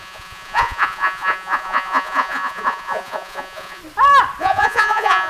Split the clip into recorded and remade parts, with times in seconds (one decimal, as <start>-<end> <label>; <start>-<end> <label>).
0.0-3.8 remade; 3.8-4.4 recorded; 4.4-5.3 remade